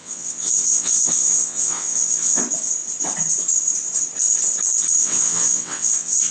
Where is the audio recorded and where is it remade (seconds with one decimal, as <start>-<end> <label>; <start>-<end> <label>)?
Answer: 0.0-2.4 remade; 2.4-5.0 recorded; 5.0-6.3 remade